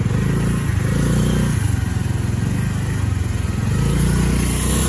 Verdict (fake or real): real